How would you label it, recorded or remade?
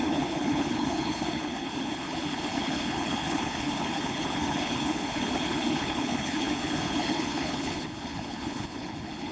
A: remade